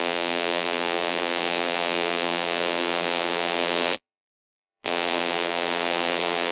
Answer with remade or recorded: remade